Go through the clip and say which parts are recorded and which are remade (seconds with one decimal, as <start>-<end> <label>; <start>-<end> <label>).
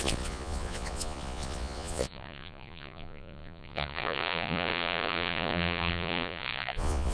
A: 0.0-7.1 remade